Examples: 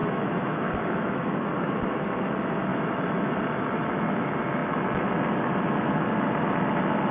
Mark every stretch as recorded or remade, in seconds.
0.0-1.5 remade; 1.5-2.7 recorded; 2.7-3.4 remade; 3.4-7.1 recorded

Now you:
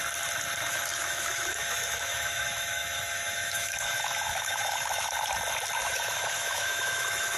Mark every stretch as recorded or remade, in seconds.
0.0-0.7 recorded; 0.7-5.1 remade; 5.1-5.8 recorded; 5.8-7.4 remade

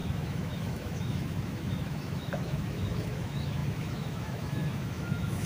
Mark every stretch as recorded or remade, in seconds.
0.0-5.5 remade